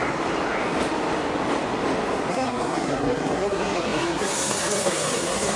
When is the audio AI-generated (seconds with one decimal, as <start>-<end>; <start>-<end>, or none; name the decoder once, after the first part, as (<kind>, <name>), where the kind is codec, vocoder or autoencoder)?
2.3-5.6 (codec, SNAC)